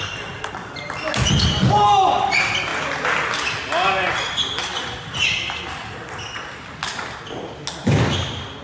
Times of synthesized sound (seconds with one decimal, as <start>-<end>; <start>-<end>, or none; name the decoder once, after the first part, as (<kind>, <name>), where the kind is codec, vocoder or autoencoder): none